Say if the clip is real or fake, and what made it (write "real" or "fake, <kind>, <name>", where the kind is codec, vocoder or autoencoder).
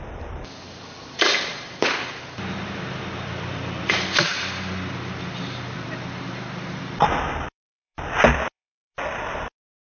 fake, vocoder, BigVGAN v2